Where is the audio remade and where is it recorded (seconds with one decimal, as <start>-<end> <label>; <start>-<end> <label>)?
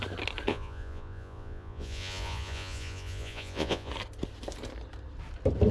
0.0-0.5 recorded; 0.5-3.9 remade; 3.9-5.7 recorded